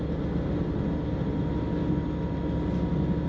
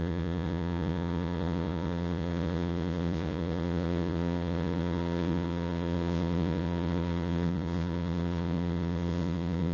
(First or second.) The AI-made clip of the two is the second